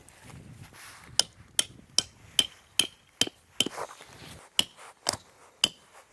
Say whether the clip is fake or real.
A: real